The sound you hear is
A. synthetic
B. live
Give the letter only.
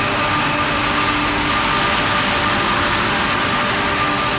B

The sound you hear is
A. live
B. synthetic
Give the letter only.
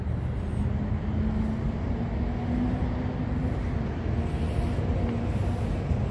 A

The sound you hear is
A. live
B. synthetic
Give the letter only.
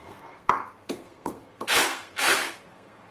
B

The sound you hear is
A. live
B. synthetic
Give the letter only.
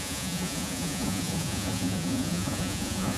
B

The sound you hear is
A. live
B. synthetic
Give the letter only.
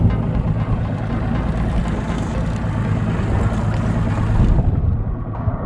A